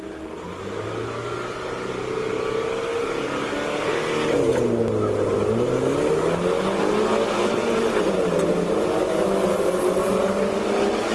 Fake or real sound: real